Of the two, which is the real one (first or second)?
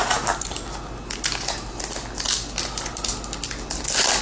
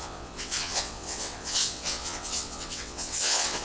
first